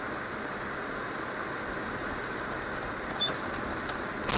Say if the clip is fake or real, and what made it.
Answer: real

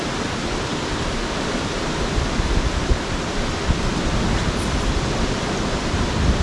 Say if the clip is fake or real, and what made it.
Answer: real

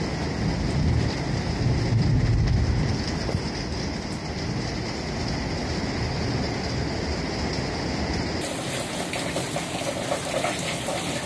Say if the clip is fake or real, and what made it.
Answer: real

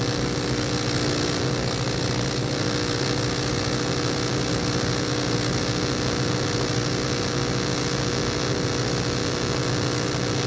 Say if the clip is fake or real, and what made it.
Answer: real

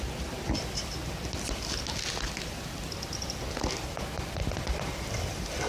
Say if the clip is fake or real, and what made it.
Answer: real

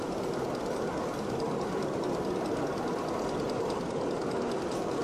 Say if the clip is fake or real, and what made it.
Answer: real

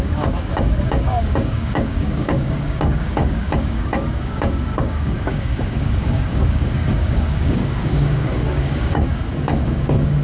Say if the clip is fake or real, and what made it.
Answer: fake, codec, DAC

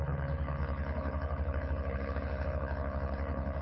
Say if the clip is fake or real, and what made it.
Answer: fake, codec, HILCodec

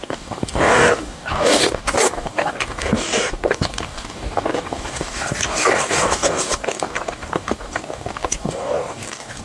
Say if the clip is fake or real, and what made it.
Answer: fake, codec, DAC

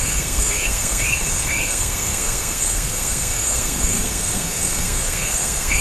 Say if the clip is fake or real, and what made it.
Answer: fake, codec, SNAC